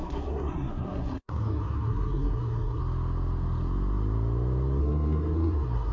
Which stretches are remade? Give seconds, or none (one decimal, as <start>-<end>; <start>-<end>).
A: 0.0-2.8; 4.8-5.9